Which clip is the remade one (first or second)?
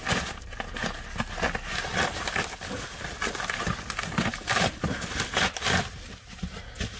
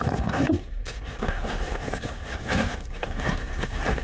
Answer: second